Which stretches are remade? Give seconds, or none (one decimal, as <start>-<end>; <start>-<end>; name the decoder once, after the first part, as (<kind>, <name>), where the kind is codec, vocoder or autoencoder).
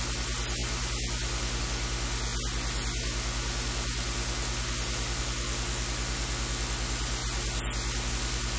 none